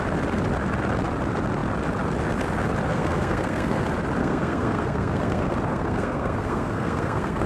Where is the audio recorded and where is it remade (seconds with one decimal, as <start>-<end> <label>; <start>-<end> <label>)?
0.0-2.9 recorded; 2.9-3.8 remade; 3.8-4.2 recorded; 4.2-7.5 remade